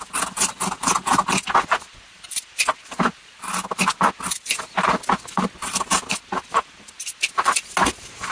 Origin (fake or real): real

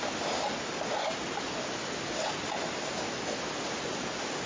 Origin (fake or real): real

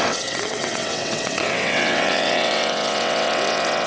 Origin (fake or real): fake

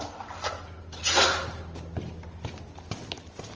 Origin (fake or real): real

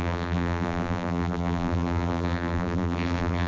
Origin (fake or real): fake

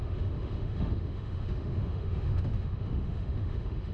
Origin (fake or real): fake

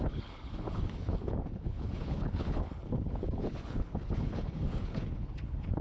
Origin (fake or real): fake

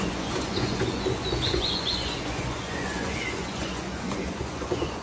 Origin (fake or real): fake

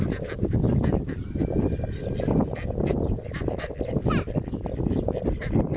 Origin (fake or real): real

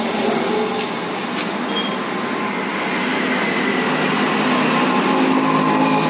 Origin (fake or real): real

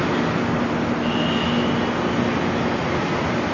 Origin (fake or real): real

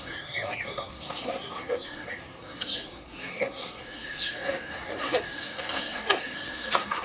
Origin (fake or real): fake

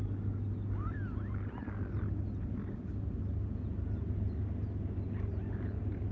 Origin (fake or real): real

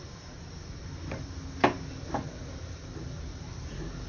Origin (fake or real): real